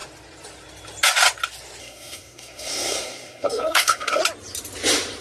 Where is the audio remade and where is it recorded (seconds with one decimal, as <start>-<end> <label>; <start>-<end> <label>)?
0.0-1.8 recorded; 1.8-4.2 remade; 4.2-5.2 recorded